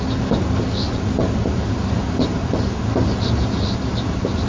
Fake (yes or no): no